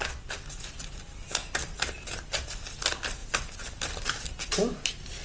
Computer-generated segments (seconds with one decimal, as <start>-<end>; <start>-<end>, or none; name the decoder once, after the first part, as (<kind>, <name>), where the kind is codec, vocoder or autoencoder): 1.4-2.0 (vocoder, BigVGAN v2)